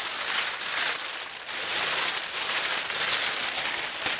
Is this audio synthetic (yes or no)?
no